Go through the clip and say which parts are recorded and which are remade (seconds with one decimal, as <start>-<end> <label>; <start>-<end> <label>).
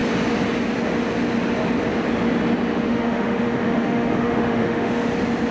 0.0-2.7 recorded; 2.7-5.1 remade; 5.1-5.5 recorded